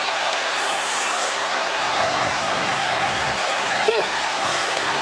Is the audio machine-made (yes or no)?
yes